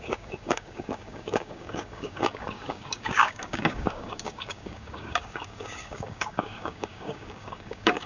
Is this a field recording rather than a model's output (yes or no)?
no